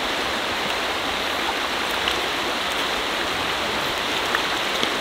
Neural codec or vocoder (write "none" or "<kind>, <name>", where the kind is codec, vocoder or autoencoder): vocoder, BigVGAN v2